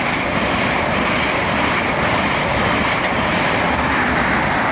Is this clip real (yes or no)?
yes